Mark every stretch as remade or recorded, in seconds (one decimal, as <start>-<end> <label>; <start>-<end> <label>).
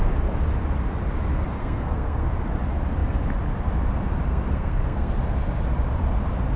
0.0-1.6 recorded; 1.6-2.3 remade; 2.3-4.3 recorded; 4.3-5.1 remade; 5.1-6.6 recorded